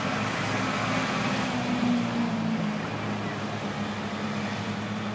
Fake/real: real